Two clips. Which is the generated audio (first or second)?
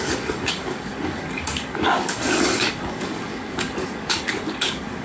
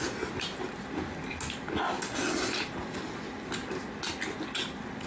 first